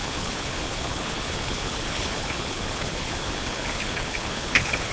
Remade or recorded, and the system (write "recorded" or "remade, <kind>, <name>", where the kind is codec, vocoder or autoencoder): remade, codec, HILCodec